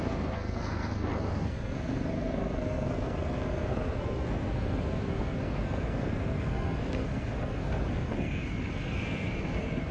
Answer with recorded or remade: remade